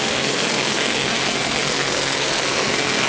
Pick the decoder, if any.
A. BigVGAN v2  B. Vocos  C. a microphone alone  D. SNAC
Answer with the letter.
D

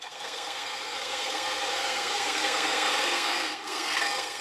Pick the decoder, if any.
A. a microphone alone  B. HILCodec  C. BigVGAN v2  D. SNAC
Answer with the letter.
D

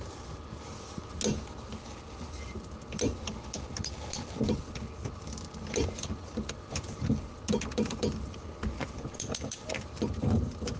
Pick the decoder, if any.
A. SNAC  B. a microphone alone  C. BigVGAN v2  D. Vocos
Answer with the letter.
B